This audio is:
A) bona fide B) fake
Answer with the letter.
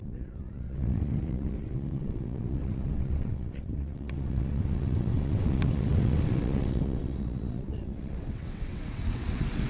B